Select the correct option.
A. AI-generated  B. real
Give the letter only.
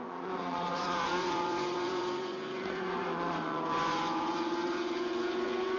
A